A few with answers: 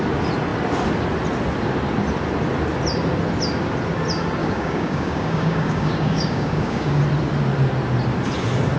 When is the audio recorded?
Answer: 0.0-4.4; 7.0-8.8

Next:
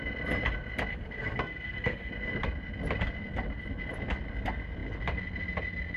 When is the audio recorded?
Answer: 0.0-0.9; 2.1-6.0

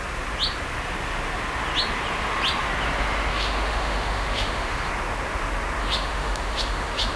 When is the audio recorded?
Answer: 0.0-3.3; 4.9-5.8

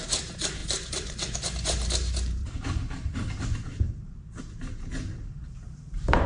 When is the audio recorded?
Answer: none

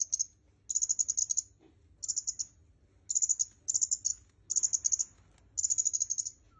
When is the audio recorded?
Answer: 0.0-6.6

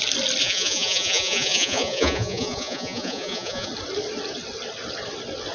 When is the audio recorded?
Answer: 0.0-0.4; 3.7-5.5